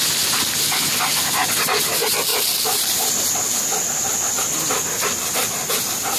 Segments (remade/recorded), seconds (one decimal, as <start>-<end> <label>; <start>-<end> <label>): 0.0-6.2 recorded